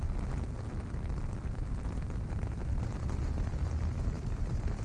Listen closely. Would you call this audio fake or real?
real